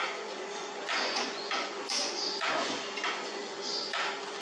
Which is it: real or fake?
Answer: fake